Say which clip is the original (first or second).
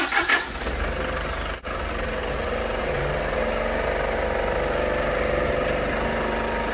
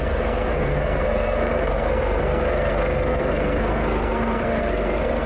first